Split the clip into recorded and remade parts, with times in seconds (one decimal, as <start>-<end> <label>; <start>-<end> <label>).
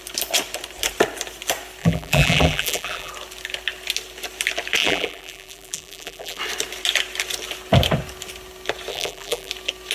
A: 0.0-1.8 recorded; 1.8-3.1 remade; 3.1-4.8 recorded; 4.8-6.4 remade; 6.4-8.9 recorded; 8.9-9.5 remade; 9.5-9.9 recorded